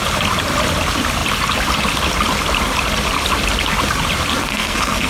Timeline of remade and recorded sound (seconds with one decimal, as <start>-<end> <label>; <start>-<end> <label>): 0.0-4.4 recorded; 4.4-5.1 remade